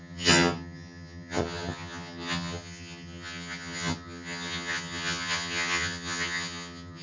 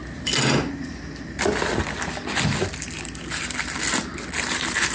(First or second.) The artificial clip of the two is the first